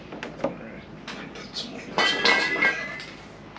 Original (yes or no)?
yes